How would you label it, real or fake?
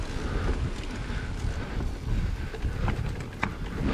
real